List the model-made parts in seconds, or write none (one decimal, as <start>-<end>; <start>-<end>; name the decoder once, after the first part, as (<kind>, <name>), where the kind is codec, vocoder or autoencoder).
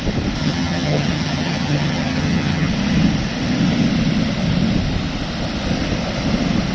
0.4-2.7 (vocoder, HiFi-GAN)